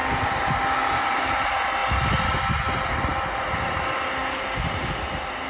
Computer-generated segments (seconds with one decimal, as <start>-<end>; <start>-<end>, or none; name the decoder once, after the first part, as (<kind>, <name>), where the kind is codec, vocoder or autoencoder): none